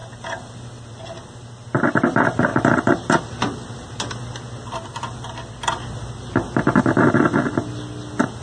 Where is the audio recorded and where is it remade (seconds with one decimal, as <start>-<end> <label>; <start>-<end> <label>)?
0.0-0.9 remade; 0.9-2.5 recorded; 2.5-3.2 remade; 3.2-8.4 recorded